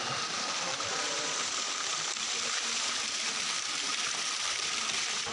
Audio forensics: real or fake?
fake